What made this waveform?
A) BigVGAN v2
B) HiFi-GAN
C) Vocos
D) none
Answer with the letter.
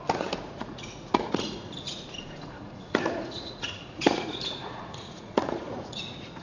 C